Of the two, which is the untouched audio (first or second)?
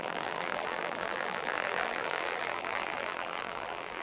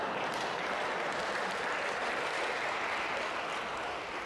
second